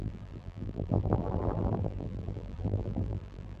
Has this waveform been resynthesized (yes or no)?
yes